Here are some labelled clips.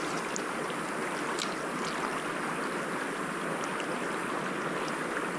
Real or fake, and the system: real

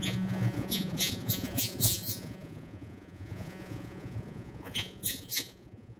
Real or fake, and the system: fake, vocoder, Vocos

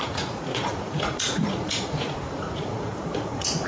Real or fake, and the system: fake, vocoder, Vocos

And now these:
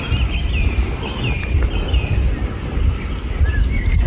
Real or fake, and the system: real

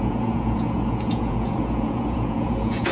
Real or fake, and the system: fake, vocoder, Vocos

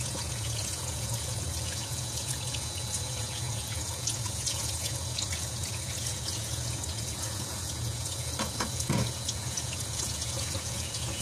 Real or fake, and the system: fake, vocoder, Vocos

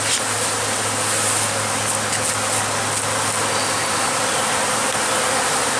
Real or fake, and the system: real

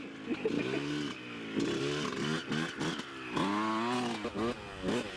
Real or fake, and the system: real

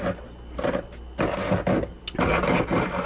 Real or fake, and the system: real